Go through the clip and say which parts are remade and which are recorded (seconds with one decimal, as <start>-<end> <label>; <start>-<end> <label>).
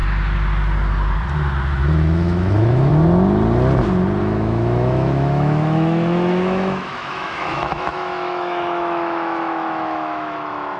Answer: 0.0-1.7 recorded; 1.7-2.9 remade; 2.9-4.2 recorded; 4.2-10.8 remade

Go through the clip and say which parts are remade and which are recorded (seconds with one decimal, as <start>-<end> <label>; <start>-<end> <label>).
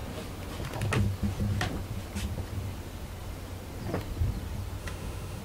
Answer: 0.0-4.8 recorded; 4.8-5.4 remade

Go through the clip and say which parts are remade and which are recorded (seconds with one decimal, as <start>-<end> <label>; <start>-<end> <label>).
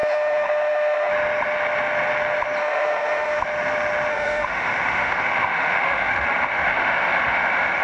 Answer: 0.0-1.1 remade; 1.1-2.6 recorded; 2.6-3.4 remade; 3.4-4.1 recorded; 4.1-7.8 remade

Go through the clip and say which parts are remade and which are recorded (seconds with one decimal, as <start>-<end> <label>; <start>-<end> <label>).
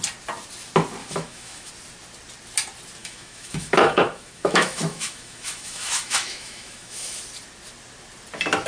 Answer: 0.0-1.0 recorded; 1.0-1.7 remade; 1.7-3.0 recorded; 3.0-7.2 remade; 7.2-8.7 recorded